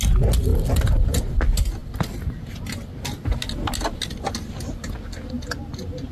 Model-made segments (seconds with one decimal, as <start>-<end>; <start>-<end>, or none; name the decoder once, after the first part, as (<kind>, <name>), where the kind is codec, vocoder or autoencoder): 0.5-1.4 (vocoder, BigVGAN v2)